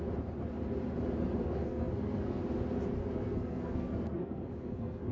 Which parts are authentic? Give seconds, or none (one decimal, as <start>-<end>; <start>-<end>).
0.0-1.4; 2.4-3.0